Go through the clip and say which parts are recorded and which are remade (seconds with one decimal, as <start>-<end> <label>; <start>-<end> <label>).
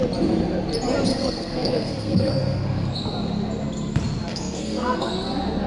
0.0-1.1 recorded; 1.1-2.9 remade; 2.9-4.3 recorded; 4.3-5.1 remade; 5.1-5.7 recorded